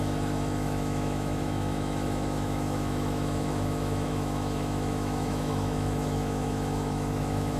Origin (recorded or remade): remade